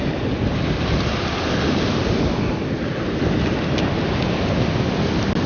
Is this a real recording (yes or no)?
yes